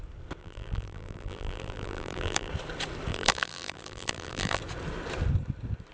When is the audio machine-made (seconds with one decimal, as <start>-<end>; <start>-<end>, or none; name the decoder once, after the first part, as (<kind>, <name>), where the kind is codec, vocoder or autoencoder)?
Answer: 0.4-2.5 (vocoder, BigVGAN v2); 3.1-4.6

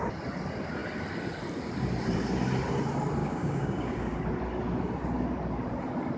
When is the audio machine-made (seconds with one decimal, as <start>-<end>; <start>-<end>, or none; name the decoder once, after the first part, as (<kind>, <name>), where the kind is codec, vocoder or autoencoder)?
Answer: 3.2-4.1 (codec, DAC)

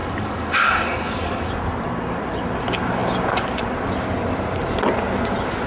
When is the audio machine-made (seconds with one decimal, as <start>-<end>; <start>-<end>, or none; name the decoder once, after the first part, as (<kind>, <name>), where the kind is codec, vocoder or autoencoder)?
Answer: 0.0-1.5 (codec, DAC)

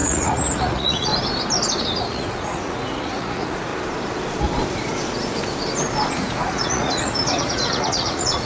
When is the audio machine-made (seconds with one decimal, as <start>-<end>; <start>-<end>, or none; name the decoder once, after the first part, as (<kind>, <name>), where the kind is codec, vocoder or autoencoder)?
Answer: 0.0-1.1 (vocoder, Vocos); 1.8-3.7; 6.1-8.5

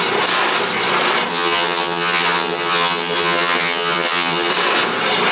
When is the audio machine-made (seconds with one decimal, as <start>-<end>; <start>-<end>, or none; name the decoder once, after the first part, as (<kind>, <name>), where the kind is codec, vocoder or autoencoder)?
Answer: 1.3-4.5 (vocoder, HiFi-GAN)

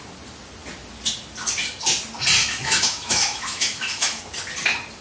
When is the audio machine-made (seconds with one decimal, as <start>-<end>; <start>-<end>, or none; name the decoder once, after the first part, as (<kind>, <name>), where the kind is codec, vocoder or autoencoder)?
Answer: 2.4-4.2 (autoencoder, DAC-VAE)

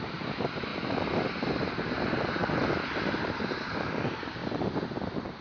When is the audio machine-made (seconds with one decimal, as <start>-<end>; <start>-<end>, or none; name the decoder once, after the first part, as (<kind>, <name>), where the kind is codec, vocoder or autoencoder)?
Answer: 0.0-0.7 (vocoder, BigVGAN v2); 1.6-2.4; 3.2-4.4